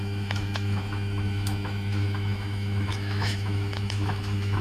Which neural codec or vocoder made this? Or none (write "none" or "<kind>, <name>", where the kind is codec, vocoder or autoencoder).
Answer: autoencoder, DAC-VAE